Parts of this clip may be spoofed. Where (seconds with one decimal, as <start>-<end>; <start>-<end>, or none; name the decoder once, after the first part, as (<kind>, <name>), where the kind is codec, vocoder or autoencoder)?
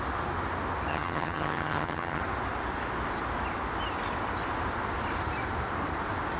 0.9-2.2 (vocoder, HiFi-GAN)